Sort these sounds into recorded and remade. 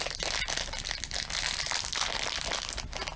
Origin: recorded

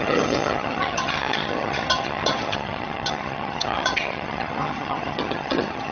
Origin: remade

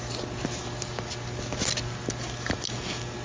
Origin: recorded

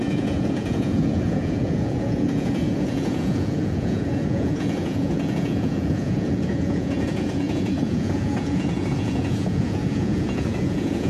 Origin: remade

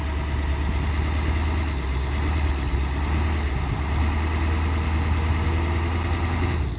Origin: recorded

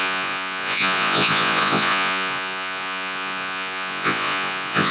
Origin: remade